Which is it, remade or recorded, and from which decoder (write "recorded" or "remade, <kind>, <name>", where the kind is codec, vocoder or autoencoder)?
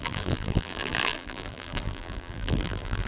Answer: remade, vocoder, BigVGAN v2